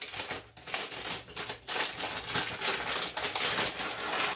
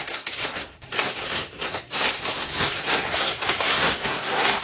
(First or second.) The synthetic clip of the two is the second